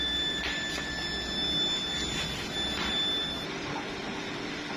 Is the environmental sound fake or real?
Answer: real